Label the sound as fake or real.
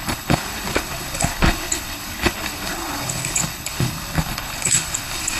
fake